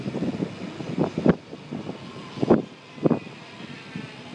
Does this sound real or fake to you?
real